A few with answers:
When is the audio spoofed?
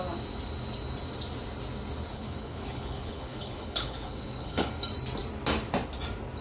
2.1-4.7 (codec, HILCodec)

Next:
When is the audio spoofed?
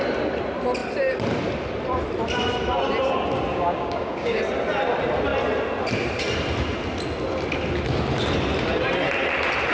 3.5-4.4 (codec, DAC)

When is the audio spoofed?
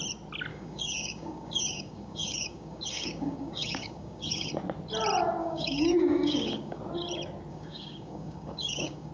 0.5-4.5 (codec, DAC); 5.4-6.8; 7.5-9.1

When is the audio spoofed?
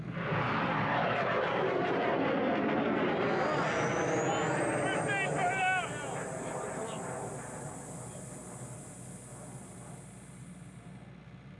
none